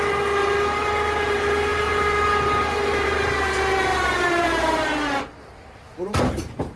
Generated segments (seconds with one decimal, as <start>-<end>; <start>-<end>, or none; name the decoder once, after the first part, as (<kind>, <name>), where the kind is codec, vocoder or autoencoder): 1.7-4.8 (vocoder, BigVGAN v2); 5.9-6.8